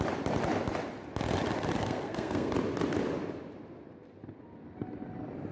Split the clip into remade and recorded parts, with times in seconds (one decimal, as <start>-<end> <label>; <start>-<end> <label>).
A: 0.0-1.8 recorded; 1.8-2.5 remade; 2.5-5.5 recorded